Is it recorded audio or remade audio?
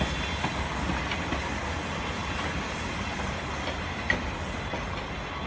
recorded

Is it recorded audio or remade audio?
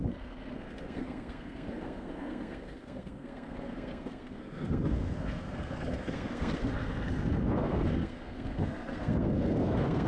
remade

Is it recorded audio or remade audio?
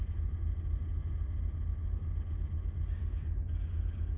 recorded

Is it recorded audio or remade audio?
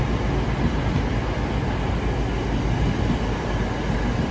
recorded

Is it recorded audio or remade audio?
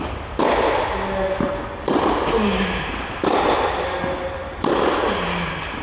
recorded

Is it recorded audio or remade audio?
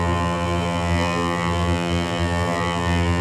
remade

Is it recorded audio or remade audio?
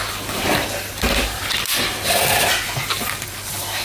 recorded